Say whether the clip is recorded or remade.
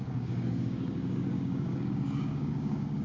remade